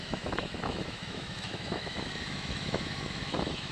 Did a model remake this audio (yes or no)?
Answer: yes